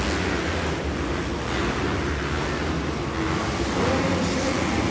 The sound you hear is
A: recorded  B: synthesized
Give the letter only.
A